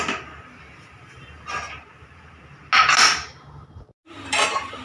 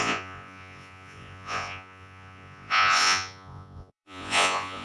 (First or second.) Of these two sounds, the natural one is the first